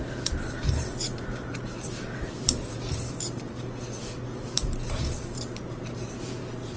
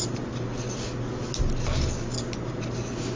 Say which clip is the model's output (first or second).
first